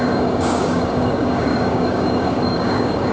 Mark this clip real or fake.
fake